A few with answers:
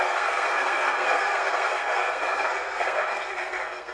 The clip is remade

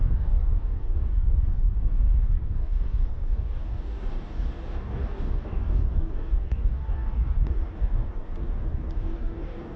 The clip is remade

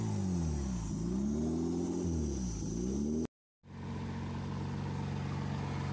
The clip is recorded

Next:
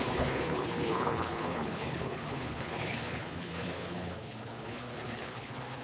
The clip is remade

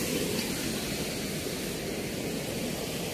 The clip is recorded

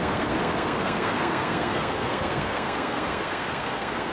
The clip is remade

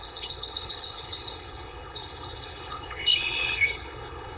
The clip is remade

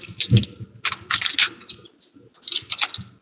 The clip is recorded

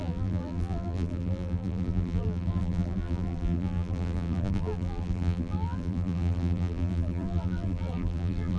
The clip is remade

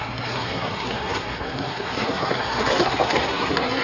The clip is remade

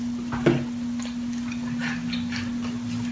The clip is recorded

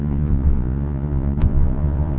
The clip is remade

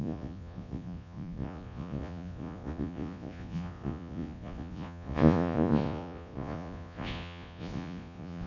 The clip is remade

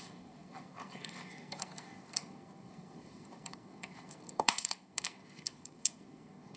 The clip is remade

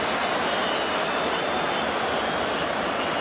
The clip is recorded